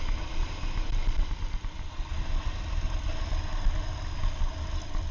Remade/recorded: recorded